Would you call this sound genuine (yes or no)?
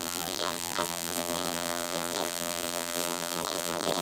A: no